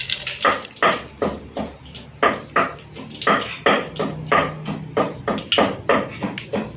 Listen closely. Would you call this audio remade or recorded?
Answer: recorded